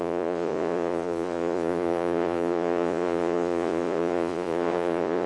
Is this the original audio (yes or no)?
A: no